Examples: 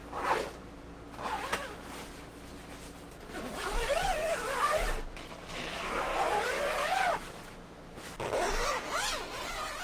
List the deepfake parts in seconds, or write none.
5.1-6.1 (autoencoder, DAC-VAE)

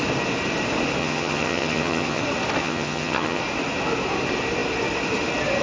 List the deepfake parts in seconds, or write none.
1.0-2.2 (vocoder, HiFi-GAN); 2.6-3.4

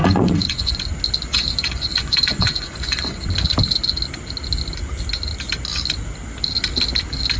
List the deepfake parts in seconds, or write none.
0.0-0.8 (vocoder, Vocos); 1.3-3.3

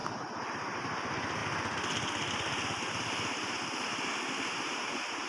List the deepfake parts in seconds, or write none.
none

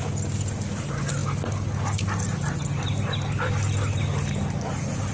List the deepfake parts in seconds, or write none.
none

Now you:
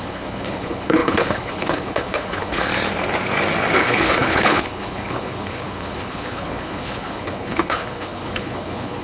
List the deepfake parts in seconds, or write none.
0.0-2.7 (codec, HILCodec); 3.8-9.0